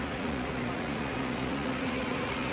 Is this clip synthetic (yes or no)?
yes